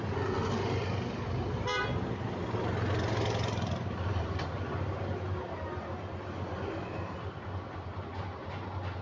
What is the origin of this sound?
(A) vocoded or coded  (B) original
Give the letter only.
B